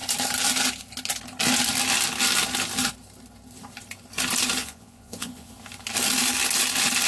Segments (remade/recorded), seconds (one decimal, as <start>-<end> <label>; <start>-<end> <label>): 0.0-4.6 recorded; 4.6-5.5 remade; 5.5-7.1 recorded